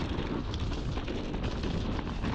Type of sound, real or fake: real